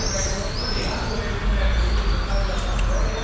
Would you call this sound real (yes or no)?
yes